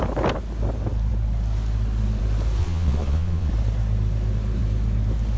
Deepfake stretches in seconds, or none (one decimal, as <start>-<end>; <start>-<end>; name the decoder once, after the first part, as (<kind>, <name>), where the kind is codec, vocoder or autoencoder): 2.6-3.5 (vocoder, Vocos)